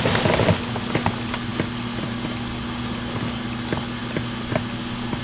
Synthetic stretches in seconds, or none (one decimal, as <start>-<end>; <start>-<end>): 1.5-2.1